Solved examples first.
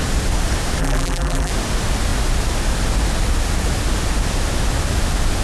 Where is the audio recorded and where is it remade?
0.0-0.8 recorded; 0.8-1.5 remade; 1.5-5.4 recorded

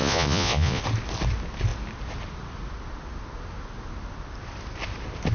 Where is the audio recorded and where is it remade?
0.0-0.8 remade; 0.8-5.3 recorded

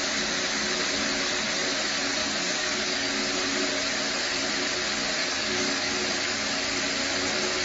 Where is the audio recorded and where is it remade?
0.0-2.2 recorded; 2.2-3.4 remade; 3.4-5.2 recorded; 5.2-5.9 remade; 5.9-7.6 recorded

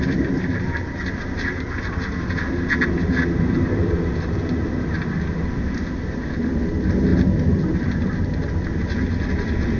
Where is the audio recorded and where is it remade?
0.0-9.8 recorded

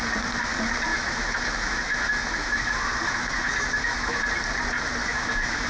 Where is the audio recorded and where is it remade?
0.0-0.9 recorded; 0.9-4.3 remade; 4.3-5.0 recorded; 5.0-5.7 remade

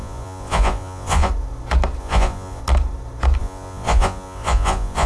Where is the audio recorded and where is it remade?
0.0-1.3 remade; 1.3-2.0 recorded; 2.0-2.6 remade; 2.6-3.4 recorded; 3.4-5.1 remade